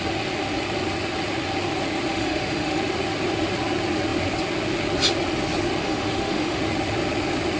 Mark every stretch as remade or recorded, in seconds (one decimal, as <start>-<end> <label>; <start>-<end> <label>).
0.0-2.1 recorded; 2.1-2.8 remade; 2.8-5.8 recorded; 5.8-6.6 remade; 6.6-7.6 recorded